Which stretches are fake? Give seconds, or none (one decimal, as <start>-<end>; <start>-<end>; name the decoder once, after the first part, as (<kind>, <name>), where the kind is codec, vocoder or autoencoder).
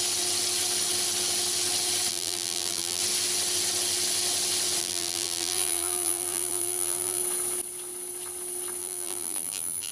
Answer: 2.1-3.0 (vocoder, BigVGAN v2); 4.8-7.2; 8.8-9.9